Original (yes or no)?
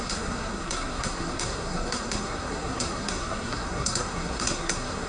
no